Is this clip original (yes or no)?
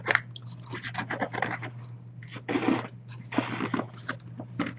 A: yes